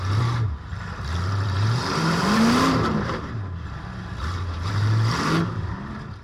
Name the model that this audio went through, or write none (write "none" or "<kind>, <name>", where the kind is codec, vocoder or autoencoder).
vocoder, BigVGAN v2